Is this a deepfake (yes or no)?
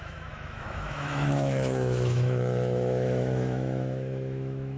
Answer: yes